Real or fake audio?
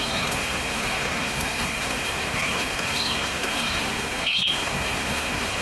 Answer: fake